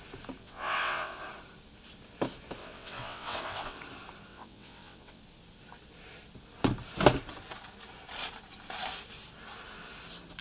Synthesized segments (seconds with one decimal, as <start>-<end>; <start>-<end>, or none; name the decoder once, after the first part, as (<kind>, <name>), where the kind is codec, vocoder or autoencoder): 0.4-1.2 (vocoder, WaveNeXt); 2.6-3.8; 4.3-5.2